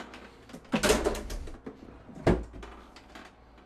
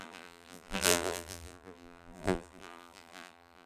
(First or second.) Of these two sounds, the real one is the first